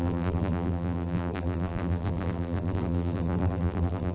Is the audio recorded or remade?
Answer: remade